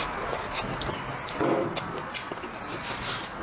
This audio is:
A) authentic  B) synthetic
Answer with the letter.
A